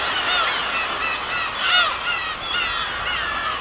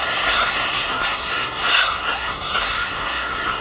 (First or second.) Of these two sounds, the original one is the first